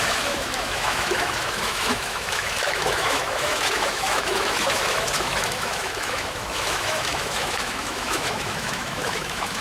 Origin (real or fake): fake